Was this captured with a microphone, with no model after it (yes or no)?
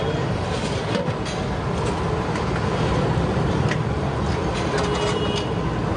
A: yes